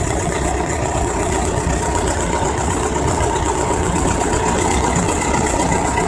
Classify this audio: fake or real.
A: fake